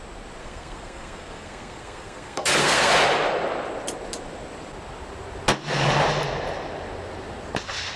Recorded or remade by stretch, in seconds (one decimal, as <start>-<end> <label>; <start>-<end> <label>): 0.0-0.4 recorded; 0.4-2.9 remade; 2.9-8.0 recorded